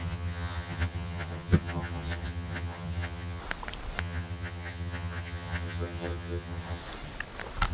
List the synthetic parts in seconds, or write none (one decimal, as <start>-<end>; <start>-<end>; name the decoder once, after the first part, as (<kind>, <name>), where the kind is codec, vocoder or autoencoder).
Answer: 0.0-3.4 (vocoder, HiFi-GAN); 4.0-6.8